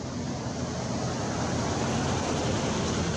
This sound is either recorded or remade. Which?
recorded